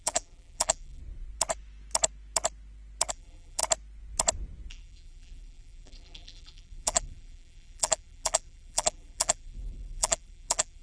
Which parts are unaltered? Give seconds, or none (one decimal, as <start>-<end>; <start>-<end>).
1.0-3.1; 3.6-4.7